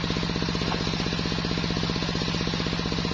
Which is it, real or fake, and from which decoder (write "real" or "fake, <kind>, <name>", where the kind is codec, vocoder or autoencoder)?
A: real